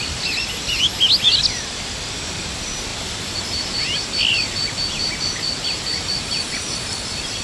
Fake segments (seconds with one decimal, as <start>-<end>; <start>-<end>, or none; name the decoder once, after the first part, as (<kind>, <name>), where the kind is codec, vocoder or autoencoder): 2.9-4.0 (vocoder, BigVGAN v2)